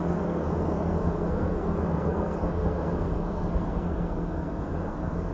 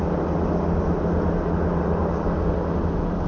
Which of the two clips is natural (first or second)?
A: second